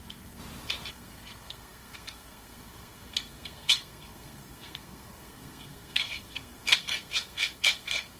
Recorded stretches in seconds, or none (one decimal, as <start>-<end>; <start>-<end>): 0.4-0.9